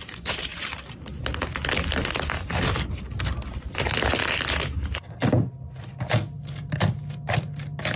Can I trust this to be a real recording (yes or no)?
yes